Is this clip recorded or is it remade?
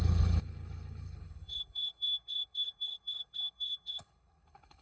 remade